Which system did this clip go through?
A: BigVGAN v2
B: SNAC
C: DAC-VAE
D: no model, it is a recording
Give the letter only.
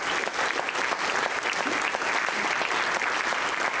D